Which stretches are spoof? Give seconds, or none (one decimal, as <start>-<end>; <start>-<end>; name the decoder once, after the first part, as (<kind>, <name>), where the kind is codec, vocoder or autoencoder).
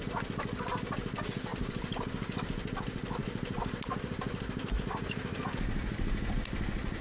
1.5-2.4 (vocoder, BigVGAN v2); 3.2-5.4